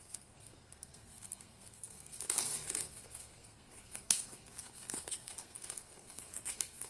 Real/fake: fake